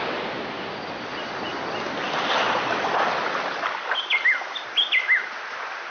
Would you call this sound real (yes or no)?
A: yes